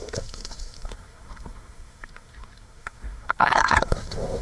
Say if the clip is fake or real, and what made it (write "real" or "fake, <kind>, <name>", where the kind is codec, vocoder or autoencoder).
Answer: fake, codec, SNAC